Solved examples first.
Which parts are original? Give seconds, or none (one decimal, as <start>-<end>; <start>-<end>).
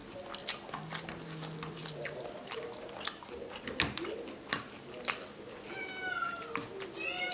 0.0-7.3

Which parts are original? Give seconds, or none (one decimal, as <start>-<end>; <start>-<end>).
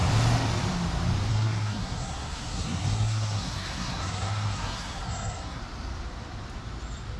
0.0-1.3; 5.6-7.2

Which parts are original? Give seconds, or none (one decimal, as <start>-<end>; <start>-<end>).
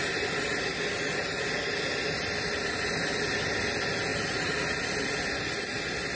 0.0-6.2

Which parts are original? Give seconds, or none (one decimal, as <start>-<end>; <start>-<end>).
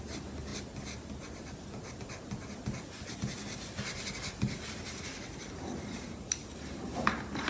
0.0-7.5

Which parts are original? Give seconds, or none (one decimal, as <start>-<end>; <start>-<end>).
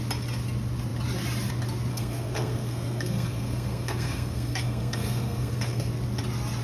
0.0-1.9; 5.9-6.6